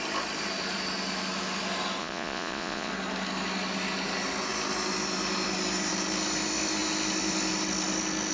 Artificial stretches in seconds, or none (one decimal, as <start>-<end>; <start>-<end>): 2.0-2.9